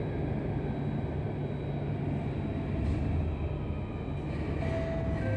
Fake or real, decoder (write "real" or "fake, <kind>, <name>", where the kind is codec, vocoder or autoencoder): real